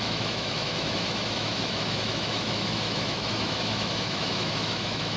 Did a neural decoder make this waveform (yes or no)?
yes